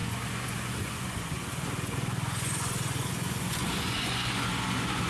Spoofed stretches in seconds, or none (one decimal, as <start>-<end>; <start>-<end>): 0.0-5.1